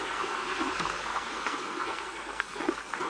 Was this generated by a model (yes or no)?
yes